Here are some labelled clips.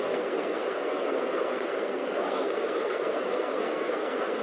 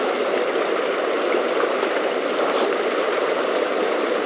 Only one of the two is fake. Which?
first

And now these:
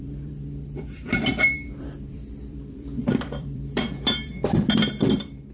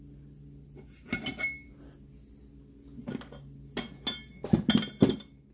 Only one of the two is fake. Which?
first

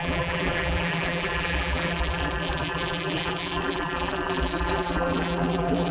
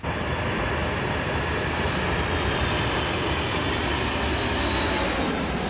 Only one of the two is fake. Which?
first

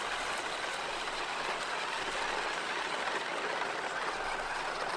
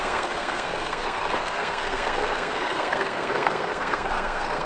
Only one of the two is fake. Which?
second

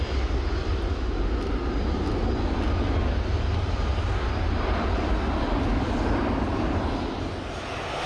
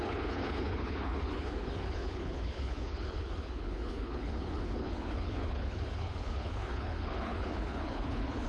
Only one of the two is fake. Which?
second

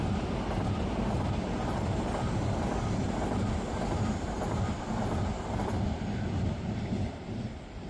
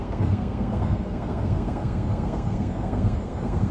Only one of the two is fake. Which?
second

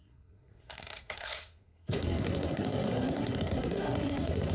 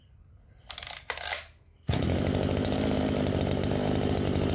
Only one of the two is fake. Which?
first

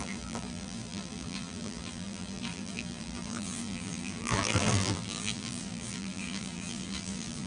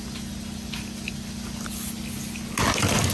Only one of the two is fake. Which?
first